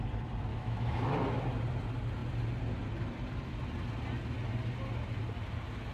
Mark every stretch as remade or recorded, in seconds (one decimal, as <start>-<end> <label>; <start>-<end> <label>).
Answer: 0.0-0.5 recorded; 0.5-1.1 remade; 1.1-5.9 recorded